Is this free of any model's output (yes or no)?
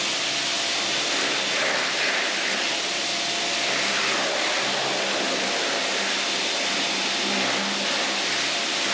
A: yes